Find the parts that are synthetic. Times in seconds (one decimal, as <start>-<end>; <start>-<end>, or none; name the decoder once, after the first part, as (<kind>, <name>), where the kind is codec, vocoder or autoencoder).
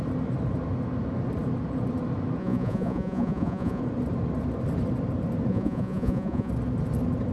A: 2.4-3.8 (vocoder, Vocos); 5.5-6.5